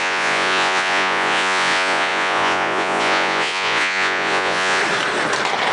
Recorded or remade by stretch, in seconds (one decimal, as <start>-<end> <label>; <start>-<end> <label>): 0.0-4.8 remade; 4.8-5.7 recorded